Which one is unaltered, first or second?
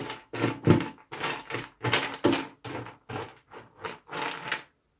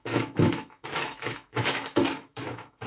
first